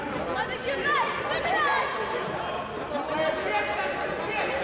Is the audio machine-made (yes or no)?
no